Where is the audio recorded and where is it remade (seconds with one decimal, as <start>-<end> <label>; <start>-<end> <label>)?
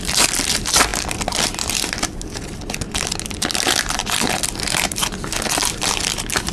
0.0-6.5 recorded